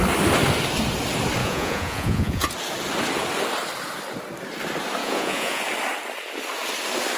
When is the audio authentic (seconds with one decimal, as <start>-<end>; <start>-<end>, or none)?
0.0-1.4; 2.5-5.0; 5.6-7.2